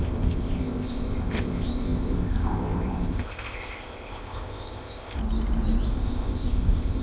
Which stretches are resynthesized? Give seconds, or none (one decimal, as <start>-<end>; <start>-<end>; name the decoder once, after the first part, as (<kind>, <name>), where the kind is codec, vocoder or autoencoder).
0.0-5.2 (codec, ZipCodec); 5.9-7.0